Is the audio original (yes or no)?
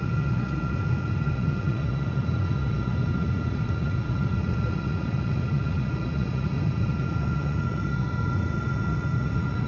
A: no